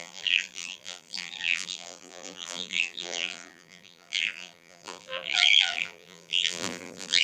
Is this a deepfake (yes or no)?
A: yes